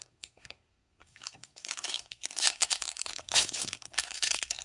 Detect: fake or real fake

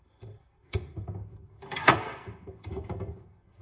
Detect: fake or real fake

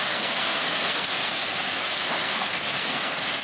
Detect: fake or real fake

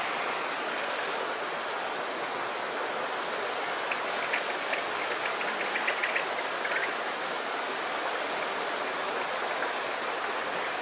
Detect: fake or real real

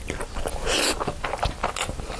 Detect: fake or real real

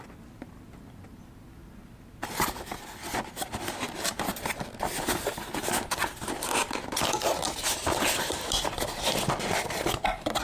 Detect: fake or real real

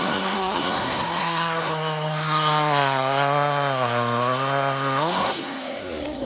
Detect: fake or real fake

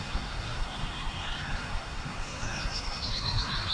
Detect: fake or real fake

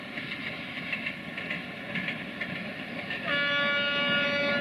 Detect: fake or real real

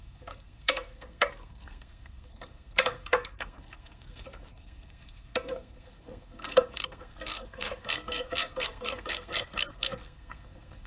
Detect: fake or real fake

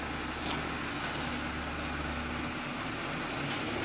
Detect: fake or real real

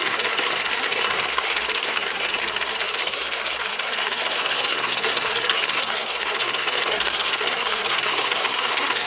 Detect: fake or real fake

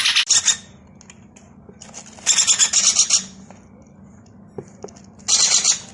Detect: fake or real real